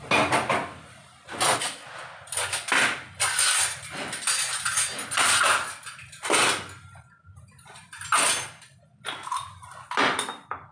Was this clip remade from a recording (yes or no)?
no